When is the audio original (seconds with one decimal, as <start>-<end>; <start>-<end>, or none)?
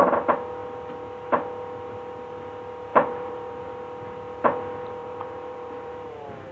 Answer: 0.0-2.9; 3.7-5.0; 5.9-6.5